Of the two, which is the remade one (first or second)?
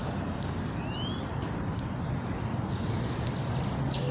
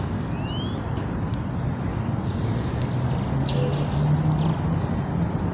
first